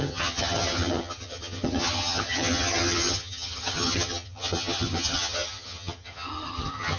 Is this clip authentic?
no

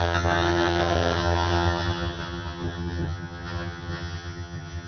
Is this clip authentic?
no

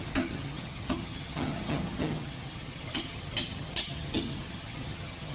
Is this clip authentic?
no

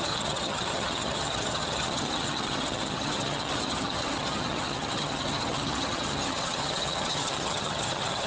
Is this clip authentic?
no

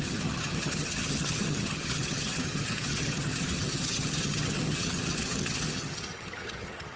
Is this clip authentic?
no